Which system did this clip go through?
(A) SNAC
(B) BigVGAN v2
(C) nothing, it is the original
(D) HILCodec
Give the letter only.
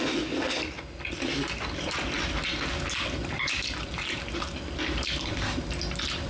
C